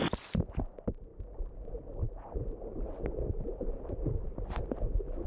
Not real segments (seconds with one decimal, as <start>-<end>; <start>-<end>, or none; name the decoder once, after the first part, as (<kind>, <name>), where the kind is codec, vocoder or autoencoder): none